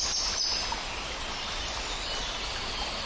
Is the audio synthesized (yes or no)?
no